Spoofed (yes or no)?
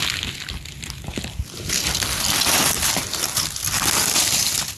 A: no